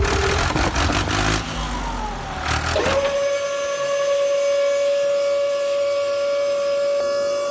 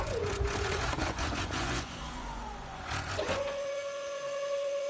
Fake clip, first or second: second